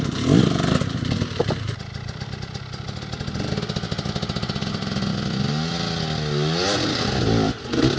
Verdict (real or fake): real